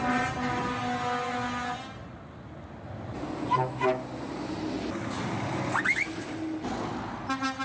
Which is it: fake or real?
real